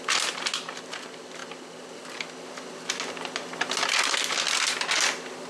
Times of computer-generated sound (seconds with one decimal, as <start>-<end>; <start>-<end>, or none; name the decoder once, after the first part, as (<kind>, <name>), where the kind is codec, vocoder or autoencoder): none